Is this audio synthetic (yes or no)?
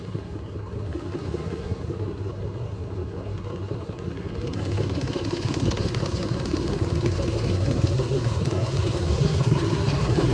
yes